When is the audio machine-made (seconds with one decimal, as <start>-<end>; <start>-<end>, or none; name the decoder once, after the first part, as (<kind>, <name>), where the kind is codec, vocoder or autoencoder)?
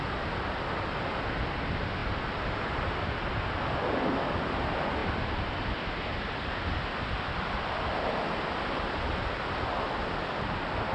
none